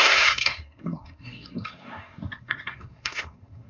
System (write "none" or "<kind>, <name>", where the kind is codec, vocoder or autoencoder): codec, SNAC